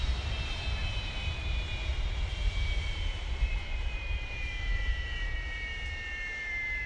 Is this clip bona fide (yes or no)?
no